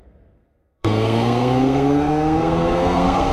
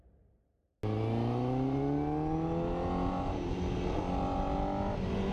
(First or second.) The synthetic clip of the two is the first